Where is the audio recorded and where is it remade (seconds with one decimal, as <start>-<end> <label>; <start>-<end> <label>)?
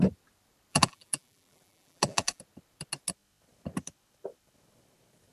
0.0-0.7 recorded; 0.7-2.4 remade; 2.4-5.3 recorded